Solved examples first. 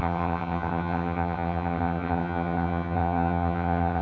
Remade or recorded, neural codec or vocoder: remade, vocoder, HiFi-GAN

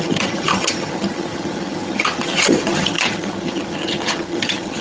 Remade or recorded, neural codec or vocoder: remade, vocoder, HiFi-GAN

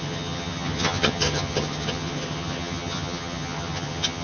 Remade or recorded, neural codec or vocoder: remade, vocoder, HiFi-GAN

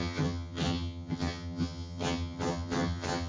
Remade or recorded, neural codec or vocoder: remade, vocoder, HiFi-GAN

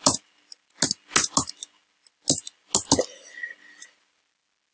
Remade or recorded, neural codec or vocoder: recorded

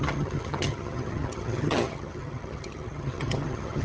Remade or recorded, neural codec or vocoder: remade, vocoder, HiFi-GAN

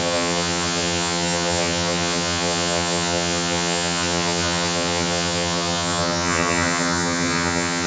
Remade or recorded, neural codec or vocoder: remade, vocoder, HiFi-GAN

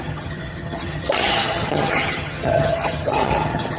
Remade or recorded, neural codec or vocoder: remade, vocoder, HiFi-GAN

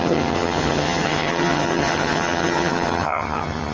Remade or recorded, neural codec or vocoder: remade, vocoder, HiFi-GAN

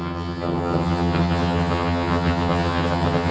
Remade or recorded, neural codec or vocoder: remade, vocoder, HiFi-GAN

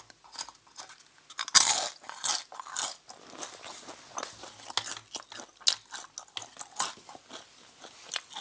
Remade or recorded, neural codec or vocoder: recorded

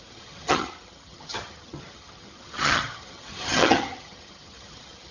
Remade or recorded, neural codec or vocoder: remade, vocoder, HiFi-GAN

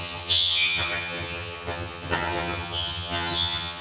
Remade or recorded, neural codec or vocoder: remade, vocoder, HiFi-GAN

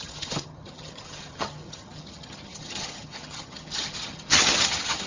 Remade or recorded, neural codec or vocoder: remade, vocoder, HiFi-GAN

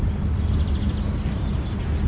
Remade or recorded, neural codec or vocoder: recorded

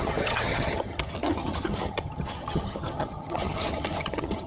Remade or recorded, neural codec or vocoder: remade, vocoder, HiFi-GAN